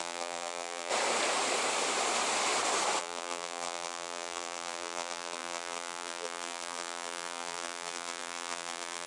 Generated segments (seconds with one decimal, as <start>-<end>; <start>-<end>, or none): 0.0-0.9; 3.0-9.1